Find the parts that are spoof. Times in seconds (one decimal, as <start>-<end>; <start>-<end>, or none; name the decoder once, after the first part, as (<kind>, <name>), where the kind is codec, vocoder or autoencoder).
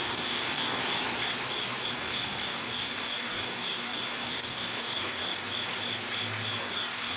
0.0-0.8 (codec, DAC); 1.9-5.2; 6.6-7.2